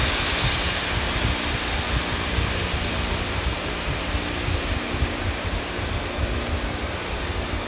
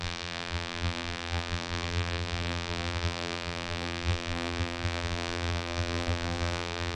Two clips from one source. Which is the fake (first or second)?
second